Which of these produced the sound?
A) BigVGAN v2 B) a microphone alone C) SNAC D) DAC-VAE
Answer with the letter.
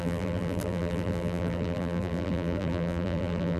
A